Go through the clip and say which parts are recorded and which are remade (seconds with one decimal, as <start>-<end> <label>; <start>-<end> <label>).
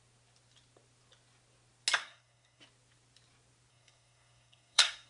0.0-2.0 recorded; 2.0-2.6 remade; 2.6-3.7 recorded; 3.7-5.1 remade